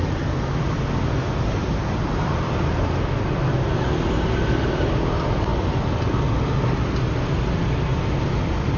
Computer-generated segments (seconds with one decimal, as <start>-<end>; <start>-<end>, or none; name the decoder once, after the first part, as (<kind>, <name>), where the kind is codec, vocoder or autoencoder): none